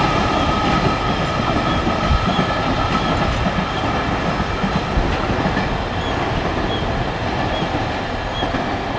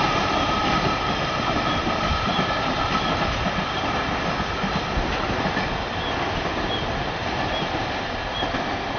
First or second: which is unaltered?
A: first